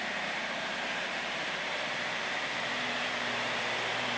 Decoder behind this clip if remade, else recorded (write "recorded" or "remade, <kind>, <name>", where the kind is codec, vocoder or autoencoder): remade, vocoder, BigVGAN v2